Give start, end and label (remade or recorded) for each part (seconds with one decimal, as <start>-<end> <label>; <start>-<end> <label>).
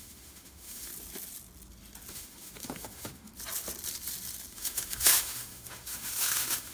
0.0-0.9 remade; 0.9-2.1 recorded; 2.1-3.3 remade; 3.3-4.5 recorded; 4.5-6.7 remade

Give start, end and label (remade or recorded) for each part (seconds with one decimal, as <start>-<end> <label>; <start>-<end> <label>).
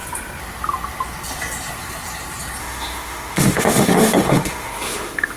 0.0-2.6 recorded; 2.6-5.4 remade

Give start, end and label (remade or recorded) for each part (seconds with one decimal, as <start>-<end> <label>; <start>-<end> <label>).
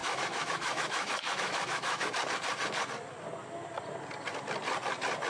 0.0-2.1 remade; 2.1-5.3 recorded